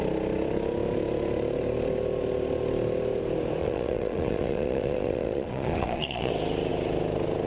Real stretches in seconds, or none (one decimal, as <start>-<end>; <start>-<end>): 0.0-3.6; 6.3-7.5